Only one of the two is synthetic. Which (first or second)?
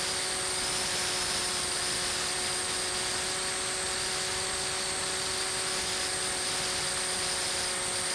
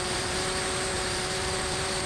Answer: second